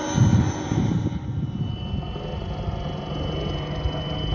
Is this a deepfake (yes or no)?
no